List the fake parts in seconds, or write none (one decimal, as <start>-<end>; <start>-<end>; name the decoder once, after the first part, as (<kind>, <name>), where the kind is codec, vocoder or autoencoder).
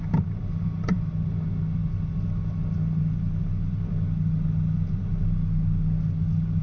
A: none